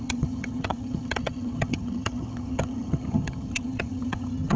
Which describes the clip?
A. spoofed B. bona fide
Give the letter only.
A